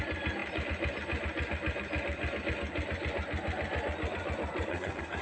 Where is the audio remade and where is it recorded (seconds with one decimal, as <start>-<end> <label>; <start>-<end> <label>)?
0.0-4.7 recorded; 4.7-5.2 remade